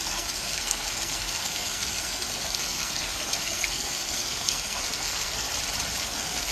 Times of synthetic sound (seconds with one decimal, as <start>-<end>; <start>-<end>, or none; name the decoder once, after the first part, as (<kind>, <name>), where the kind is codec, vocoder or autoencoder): 0.0-5.5 (codec, SNAC); 6.0-6.5